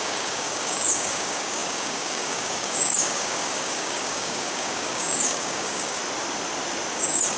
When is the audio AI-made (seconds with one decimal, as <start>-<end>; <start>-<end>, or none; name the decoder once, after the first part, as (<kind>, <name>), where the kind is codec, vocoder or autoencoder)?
0.0-6.0 (codec, DAC); 6.9-7.4